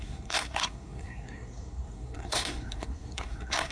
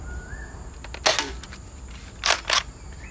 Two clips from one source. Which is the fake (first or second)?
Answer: first